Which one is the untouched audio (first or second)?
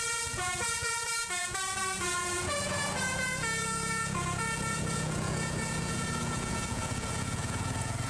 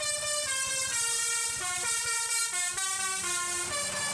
second